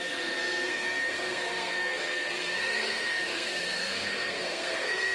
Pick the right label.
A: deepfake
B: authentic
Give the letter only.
A